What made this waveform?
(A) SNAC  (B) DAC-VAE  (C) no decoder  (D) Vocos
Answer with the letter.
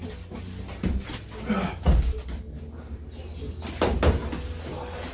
C